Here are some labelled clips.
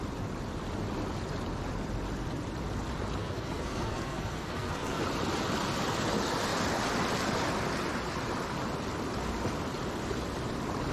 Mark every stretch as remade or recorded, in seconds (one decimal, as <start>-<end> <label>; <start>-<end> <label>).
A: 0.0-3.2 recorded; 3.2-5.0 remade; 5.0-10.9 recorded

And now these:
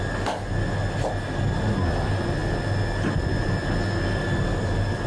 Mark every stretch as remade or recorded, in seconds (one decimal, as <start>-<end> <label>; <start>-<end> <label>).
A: 0.0-5.1 recorded

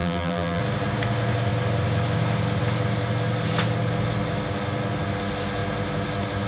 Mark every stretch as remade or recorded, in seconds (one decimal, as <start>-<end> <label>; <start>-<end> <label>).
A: 0.0-0.6 remade; 0.6-6.5 recorded

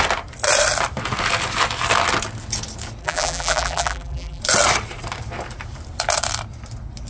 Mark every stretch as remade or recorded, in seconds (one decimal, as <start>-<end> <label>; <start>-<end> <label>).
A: 0.0-3.0 recorded; 3.0-4.4 remade; 4.4-7.1 recorded

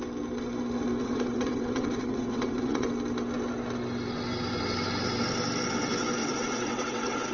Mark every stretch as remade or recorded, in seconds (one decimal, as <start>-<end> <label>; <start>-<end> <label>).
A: 0.0-1.0 recorded; 1.0-2.9 remade; 2.9-6.2 recorded; 6.2-7.3 remade

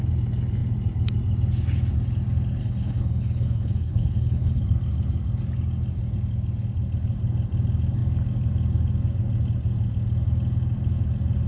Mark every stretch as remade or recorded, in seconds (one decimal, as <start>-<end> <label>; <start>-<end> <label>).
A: 0.0-2.6 recorded; 2.6-4.6 remade; 4.6-11.5 recorded